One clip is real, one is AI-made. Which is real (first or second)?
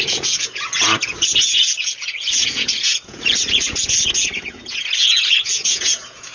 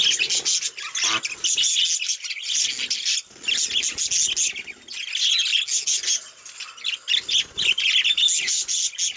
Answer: second